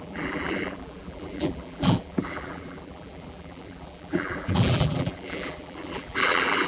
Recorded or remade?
remade